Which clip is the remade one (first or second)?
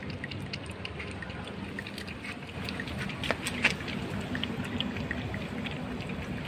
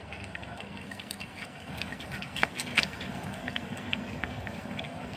second